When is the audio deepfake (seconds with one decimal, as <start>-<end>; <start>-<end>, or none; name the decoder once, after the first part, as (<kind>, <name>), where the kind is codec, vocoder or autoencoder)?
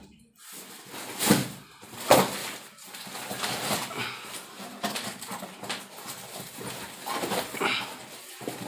1.4-2.0 (vocoder, BigVGAN v2); 2.4-6.6